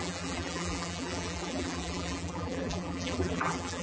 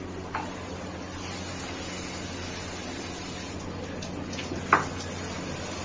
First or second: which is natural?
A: second